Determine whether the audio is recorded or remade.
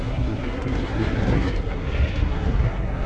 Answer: remade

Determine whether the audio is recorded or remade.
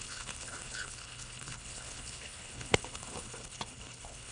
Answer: remade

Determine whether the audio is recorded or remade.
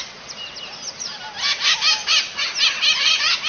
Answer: recorded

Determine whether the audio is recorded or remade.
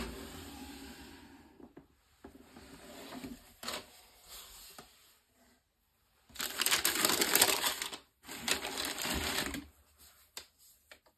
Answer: recorded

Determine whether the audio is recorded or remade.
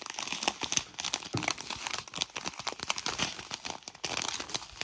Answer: recorded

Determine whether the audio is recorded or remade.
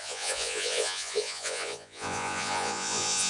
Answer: remade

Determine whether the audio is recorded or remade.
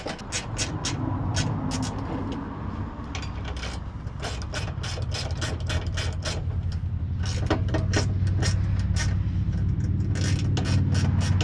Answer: recorded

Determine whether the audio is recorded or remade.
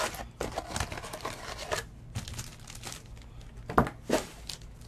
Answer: recorded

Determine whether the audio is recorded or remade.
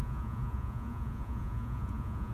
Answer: remade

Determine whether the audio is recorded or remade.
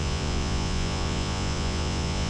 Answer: remade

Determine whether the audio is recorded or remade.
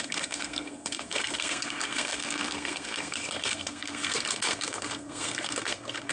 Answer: remade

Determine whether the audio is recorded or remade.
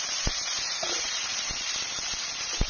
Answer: remade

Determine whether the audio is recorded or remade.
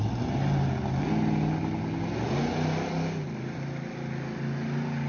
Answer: recorded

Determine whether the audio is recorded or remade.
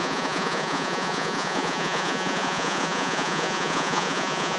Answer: remade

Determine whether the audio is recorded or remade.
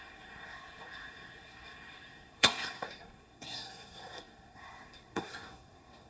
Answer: remade